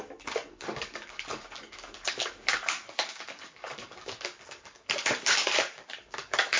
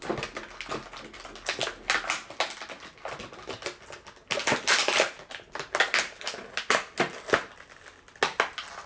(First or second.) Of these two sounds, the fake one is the first